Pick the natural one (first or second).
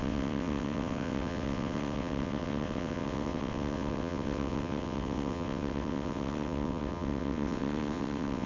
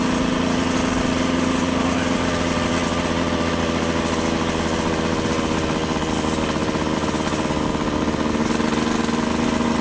second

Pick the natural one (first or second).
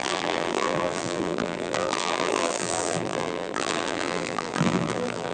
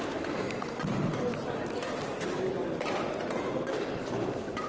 second